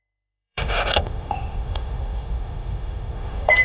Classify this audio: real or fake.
fake